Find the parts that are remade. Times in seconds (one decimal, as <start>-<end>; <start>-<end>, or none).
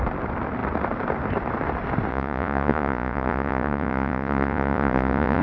2.1-5.4